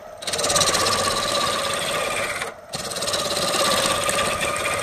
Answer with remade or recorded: recorded